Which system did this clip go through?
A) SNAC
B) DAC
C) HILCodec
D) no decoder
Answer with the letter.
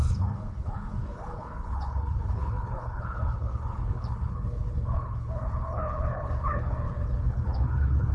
C